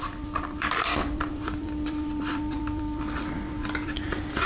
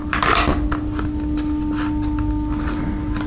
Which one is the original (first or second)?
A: second